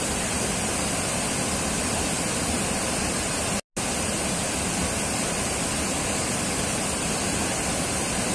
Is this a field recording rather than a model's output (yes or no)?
yes